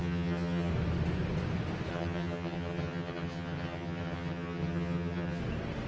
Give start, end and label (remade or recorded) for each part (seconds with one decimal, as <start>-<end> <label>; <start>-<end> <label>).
0.0-0.7 remade; 0.7-1.9 recorded; 1.9-5.4 remade; 5.4-5.9 recorded